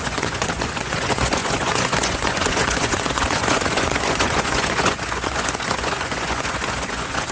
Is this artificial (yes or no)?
yes